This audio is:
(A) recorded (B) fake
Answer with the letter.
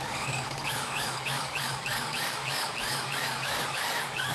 B